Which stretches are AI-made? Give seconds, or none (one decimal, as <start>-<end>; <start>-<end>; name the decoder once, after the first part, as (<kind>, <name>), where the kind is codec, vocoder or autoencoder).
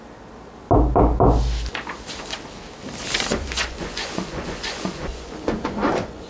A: 3.3-6.3 (vocoder, Vocos)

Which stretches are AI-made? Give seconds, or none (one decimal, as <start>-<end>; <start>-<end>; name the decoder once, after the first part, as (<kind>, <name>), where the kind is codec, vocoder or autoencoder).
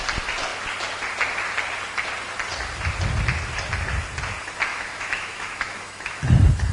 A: 4.7-6.2 (autoencoder, DAC-VAE)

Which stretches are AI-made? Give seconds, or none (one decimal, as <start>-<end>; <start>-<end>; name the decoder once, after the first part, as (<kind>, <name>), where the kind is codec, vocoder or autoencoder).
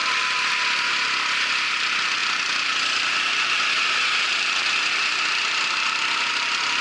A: none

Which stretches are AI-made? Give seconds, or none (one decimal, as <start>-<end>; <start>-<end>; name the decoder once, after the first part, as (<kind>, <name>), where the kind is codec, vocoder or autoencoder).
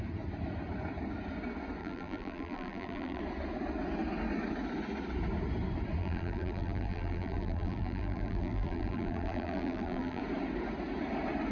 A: 1.8-3.2 (vocoder, BigVGAN v2); 6.0-10.2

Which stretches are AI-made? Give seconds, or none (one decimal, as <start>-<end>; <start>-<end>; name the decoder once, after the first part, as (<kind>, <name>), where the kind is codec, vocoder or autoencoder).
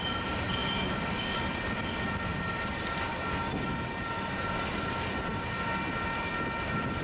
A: none